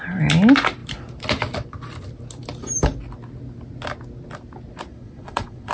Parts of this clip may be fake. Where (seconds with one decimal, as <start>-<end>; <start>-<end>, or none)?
4.9-5.7